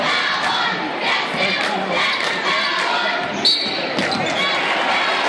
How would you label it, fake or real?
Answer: real